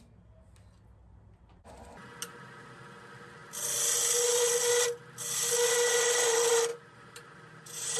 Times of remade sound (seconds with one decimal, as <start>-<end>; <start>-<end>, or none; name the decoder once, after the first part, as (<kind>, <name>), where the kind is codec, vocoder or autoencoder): none